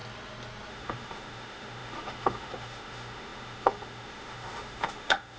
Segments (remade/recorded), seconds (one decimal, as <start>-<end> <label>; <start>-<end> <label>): 0.0-0.7 recorded; 0.7-5.4 remade

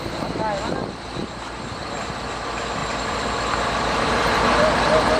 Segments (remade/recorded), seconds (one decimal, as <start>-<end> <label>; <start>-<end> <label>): 0.0-2.8 recorded; 2.8-4.0 remade; 4.0-5.2 recorded

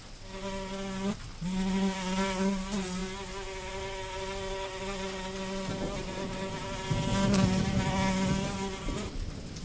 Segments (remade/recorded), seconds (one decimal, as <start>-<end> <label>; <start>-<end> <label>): 0.0-9.6 recorded

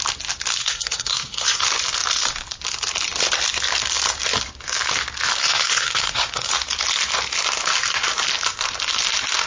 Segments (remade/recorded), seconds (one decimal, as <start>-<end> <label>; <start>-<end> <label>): 0.0-0.6 recorded; 0.6-1.6 remade; 1.6-5.4 recorded; 5.4-6.5 remade; 6.5-9.5 recorded

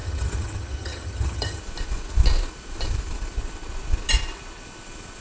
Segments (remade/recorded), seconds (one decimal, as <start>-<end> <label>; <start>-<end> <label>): 0.0-1.6 remade; 1.6-5.2 recorded

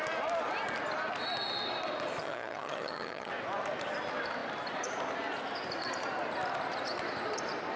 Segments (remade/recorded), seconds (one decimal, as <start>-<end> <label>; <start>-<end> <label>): 0.0-2.2 recorded; 2.2-3.3 remade; 3.3-7.8 recorded

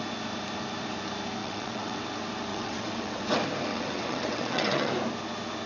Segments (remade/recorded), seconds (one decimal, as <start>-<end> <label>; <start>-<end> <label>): 0.0-1.4 recorded; 1.4-2.0 remade; 2.0-2.5 recorded; 2.5-3.3 remade; 3.3-3.7 recorded; 3.7-4.9 remade; 4.9-5.7 recorded

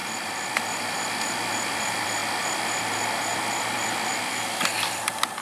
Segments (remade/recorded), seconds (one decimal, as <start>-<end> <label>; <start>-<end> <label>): 0.0-2.2 remade; 2.2-2.8 recorded; 2.8-5.4 remade